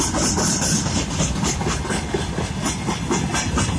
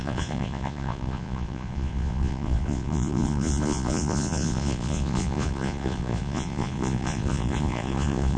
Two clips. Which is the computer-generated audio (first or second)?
second